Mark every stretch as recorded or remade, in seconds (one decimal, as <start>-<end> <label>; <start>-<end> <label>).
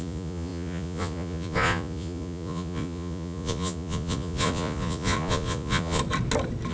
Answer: 0.0-6.0 remade; 6.0-6.7 recorded